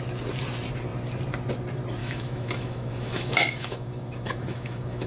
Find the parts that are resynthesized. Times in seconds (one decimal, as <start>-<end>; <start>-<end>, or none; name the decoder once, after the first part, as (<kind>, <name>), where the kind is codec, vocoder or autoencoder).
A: 2.0-5.1 (autoencoder, DAC-VAE)